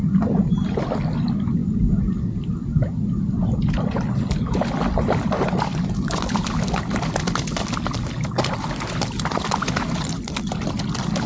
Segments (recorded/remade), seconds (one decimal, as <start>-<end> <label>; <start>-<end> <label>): 0.0-11.3 recorded